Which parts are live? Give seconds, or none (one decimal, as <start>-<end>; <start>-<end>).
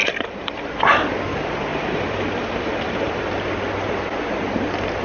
0.7-1.7; 3.2-5.0